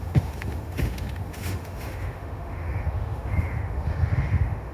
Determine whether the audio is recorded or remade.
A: remade